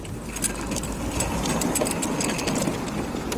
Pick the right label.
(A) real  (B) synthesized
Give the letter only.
A